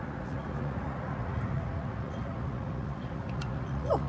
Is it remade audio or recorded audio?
remade